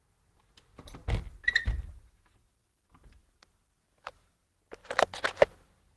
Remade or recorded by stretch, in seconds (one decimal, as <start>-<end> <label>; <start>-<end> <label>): 0.0-6.0 recorded

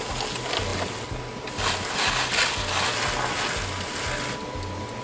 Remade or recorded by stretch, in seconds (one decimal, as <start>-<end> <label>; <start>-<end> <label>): 0.0-5.0 recorded

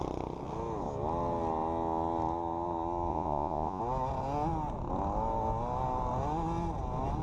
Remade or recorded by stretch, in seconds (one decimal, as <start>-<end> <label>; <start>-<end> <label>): 0.0-3.1 recorded; 3.1-3.8 remade; 3.8-7.2 recorded

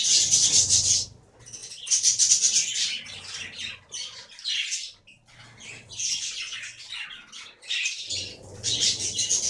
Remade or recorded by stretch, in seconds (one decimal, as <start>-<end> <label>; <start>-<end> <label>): 0.0-9.5 recorded

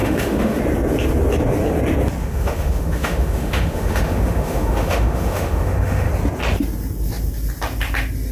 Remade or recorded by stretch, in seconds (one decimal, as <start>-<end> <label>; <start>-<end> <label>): 0.0-0.6 remade; 0.6-2.2 recorded; 2.2-6.1 remade; 6.1-8.3 recorded

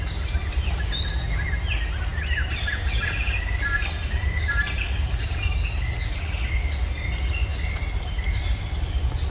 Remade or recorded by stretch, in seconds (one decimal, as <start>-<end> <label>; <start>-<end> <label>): 0.0-9.3 recorded

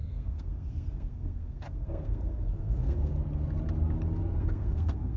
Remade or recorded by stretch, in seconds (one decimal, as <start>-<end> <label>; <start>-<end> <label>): 0.0-3.1 remade; 3.1-4.4 recorded; 4.4-5.2 remade

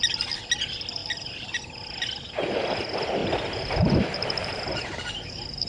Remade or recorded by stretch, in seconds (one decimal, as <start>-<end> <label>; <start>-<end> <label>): 0.0-1.0 recorded; 1.0-1.6 remade; 1.6-3.2 recorded; 3.2-5.7 remade